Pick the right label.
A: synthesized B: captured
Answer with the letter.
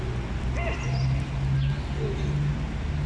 B